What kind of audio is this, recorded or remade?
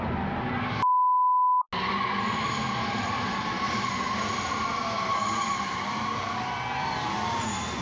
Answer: recorded